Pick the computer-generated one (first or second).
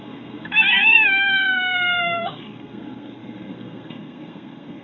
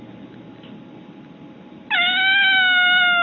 first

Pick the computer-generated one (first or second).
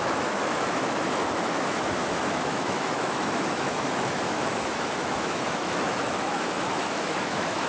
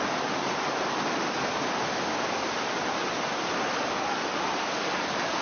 first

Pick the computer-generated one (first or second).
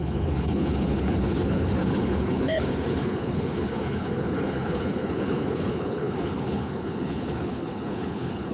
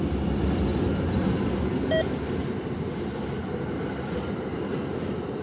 first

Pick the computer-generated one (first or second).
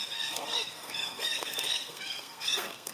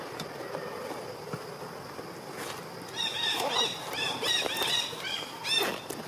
first